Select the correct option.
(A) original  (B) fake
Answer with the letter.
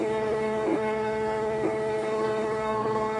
B